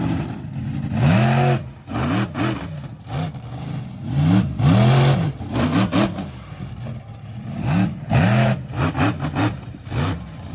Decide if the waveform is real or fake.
real